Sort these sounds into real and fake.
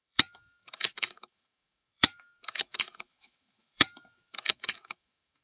fake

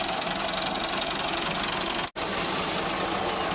real